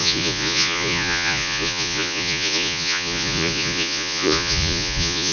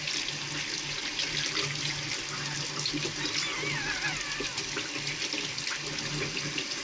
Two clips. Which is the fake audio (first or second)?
first